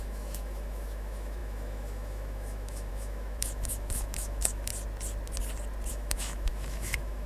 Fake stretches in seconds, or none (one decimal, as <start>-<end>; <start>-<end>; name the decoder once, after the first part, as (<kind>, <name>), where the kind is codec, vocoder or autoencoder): 0.0-4.7 (autoencoder, DAC-VAE); 5.9-7.3